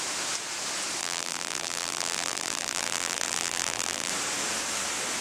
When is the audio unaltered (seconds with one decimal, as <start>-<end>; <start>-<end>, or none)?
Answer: 0.0-1.0; 4.1-5.2